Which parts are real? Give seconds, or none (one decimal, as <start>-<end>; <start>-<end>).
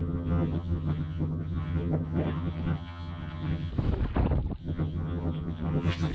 3.7-4.6